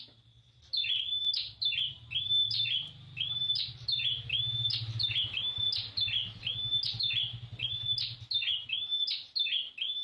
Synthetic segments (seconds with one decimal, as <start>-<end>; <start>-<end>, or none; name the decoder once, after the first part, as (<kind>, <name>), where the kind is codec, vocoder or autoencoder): none